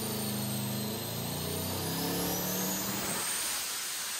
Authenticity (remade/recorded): recorded